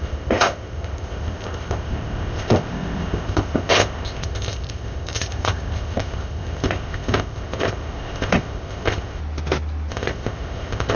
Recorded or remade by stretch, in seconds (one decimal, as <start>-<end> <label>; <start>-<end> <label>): 0.0-9.2 remade; 9.2-9.9 recorded; 9.9-11.0 remade